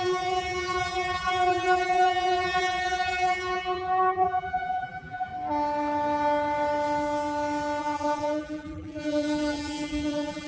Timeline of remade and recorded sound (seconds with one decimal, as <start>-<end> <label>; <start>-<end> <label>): 0.0-5.3 remade; 5.3-7.8 recorded; 7.8-10.5 remade